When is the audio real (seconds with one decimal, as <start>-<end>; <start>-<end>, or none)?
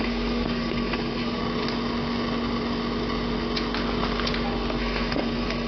1.4-4.8